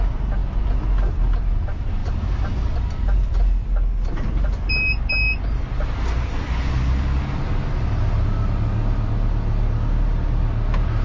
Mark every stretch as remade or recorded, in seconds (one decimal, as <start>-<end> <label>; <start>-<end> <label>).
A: 0.0-11.0 recorded